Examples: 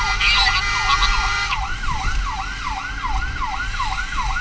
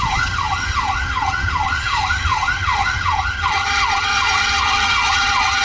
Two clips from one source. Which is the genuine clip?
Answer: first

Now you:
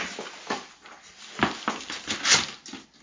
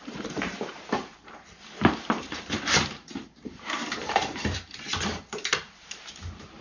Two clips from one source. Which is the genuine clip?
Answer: first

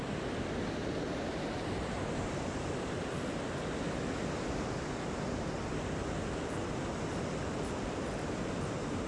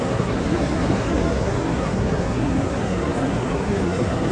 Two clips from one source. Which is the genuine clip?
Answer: first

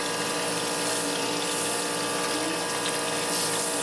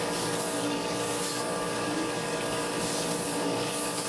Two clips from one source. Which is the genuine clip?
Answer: first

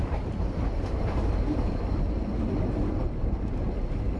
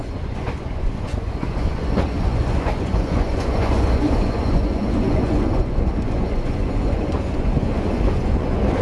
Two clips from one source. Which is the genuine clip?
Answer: first